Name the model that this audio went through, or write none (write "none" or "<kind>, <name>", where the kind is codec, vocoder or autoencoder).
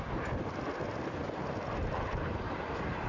none